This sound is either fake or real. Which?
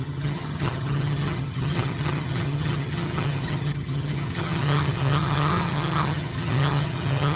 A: fake